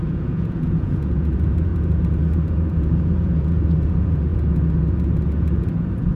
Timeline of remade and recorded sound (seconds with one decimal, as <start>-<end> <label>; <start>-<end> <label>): 0.0-6.1 remade